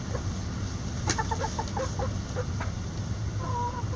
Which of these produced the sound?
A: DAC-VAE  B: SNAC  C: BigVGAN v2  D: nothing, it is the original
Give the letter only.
D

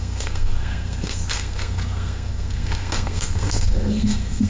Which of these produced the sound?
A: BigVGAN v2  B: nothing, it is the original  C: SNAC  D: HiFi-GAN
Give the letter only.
C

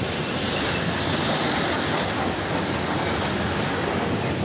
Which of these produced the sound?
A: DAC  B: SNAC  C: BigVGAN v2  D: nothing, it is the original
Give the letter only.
D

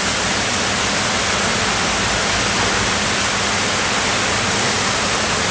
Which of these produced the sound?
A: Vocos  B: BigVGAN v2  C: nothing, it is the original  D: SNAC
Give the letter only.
C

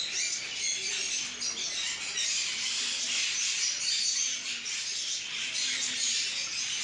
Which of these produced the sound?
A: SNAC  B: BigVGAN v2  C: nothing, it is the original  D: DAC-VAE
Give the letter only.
C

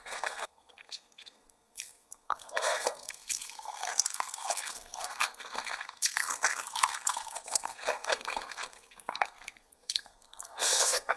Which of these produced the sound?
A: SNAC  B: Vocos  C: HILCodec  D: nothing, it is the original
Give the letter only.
A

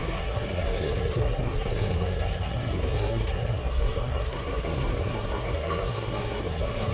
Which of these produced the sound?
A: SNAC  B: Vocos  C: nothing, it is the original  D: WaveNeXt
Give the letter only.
A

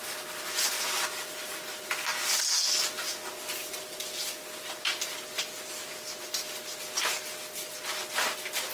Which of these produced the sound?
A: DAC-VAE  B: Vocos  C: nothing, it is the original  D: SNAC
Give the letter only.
C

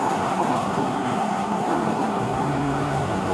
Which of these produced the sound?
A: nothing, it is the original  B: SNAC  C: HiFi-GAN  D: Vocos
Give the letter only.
B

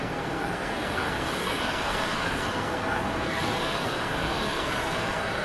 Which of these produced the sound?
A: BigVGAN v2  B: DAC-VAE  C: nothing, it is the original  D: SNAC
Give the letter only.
D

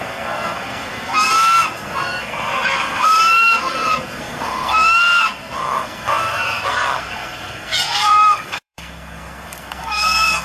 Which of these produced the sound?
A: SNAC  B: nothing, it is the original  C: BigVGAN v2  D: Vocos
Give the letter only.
A